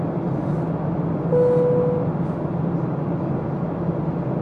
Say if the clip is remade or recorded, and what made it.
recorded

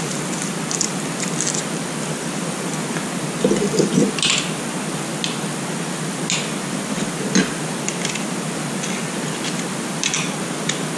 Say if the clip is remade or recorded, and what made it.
recorded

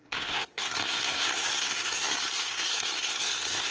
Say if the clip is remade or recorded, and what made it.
remade, codec, SNAC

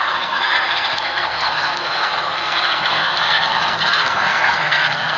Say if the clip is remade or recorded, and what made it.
remade, codec, SNAC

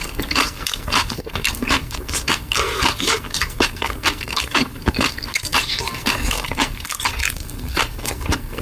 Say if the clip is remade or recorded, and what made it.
remade, codec, SNAC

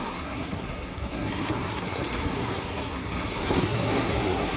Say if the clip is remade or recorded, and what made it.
remade, codec, SNAC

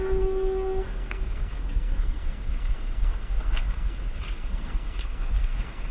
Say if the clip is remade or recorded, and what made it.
remade, codec, SNAC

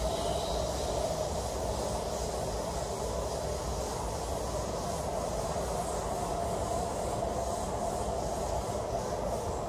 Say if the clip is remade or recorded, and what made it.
recorded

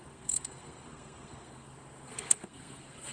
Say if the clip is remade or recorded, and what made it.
remade, codec, SNAC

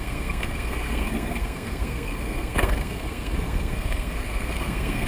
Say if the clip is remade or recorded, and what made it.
remade, codec, SNAC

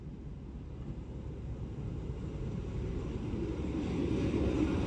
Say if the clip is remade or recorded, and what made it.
recorded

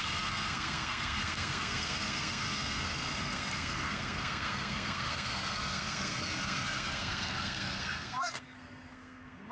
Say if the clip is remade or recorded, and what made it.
remade, codec, SNAC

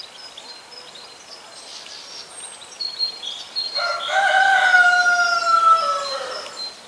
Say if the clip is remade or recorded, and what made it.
recorded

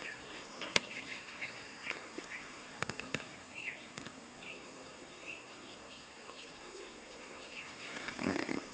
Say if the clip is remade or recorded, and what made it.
remade, codec, SNAC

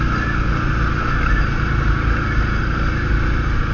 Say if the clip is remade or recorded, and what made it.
recorded